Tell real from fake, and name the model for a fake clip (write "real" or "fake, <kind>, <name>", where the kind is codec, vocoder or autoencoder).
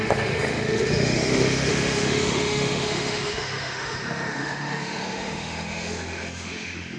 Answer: fake, autoencoder, DAC-VAE